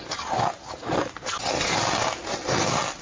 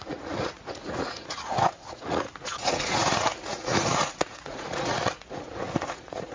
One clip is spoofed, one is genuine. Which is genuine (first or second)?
first